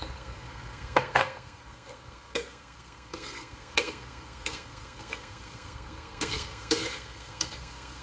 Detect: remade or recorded remade